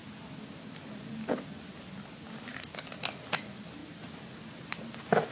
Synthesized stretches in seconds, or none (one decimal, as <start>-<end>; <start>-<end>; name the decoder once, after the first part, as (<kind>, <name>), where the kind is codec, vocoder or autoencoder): none